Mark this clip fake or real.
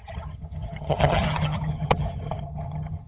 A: fake